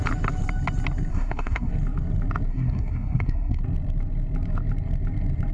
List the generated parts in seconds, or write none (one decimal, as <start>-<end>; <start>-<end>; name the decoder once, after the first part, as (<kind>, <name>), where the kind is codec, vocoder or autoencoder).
1.1-1.7 (codec, SNAC); 2.5-3.6